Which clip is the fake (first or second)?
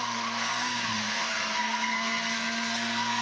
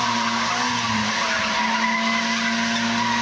first